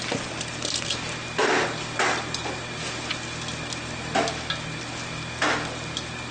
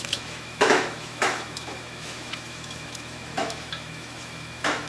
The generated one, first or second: second